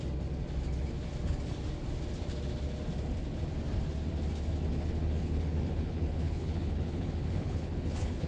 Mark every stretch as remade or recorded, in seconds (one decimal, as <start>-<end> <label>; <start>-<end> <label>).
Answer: 0.0-4.7 recorded; 4.7-8.3 remade